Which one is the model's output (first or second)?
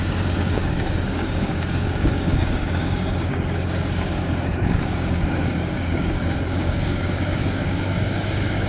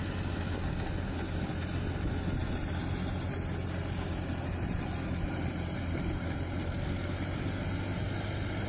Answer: first